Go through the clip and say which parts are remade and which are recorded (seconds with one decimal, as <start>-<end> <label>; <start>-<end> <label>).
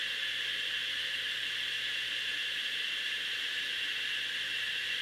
0.0-0.8 recorded; 0.8-3.8 remade; 3.8-4.5 recorded; 4.5-5.0 remade